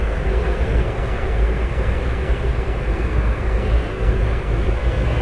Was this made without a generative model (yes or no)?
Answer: no